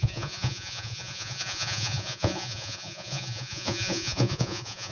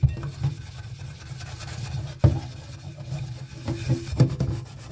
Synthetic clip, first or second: first